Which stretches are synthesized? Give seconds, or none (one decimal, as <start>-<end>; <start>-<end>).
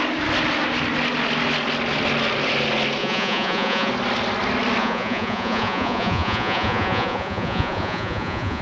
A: 3.0-3.9; 4.8-8.6